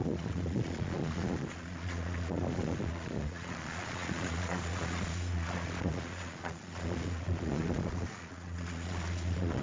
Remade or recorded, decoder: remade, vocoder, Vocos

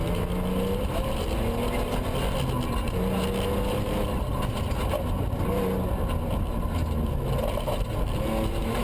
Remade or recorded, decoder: recorded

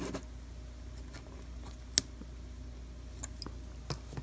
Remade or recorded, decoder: recorded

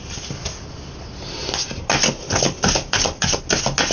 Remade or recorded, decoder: recorded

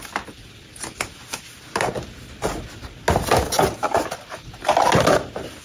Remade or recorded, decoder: recorded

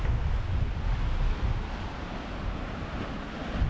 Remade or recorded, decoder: recorded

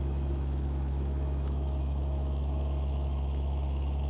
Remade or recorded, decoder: remade, autoencoder, DAC-VAE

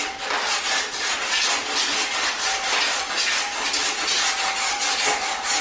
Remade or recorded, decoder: recorded